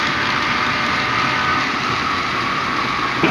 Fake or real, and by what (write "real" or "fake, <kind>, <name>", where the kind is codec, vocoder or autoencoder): real